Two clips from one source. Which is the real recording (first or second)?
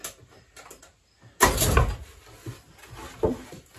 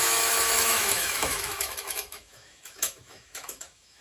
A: first